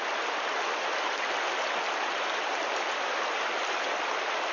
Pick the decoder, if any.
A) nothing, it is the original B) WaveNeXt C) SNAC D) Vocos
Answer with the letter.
A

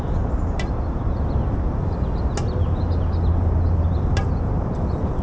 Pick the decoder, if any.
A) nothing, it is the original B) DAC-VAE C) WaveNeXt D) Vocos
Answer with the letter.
A